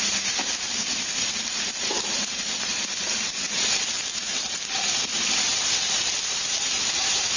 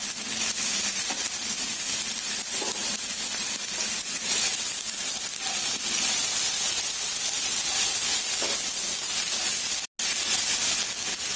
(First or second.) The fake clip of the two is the first